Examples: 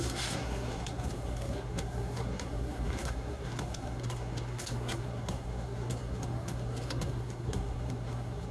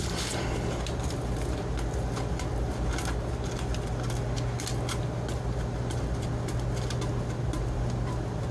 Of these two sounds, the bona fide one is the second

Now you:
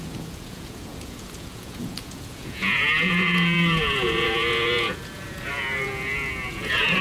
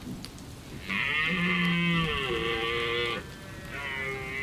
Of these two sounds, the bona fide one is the second